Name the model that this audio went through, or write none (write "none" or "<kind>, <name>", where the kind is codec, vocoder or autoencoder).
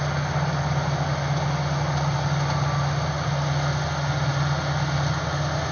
none